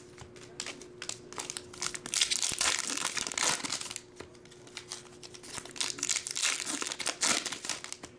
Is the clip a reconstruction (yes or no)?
no